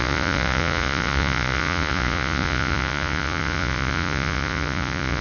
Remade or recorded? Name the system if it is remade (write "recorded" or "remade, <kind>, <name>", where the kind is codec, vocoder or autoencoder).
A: remade, vocoder, Vocos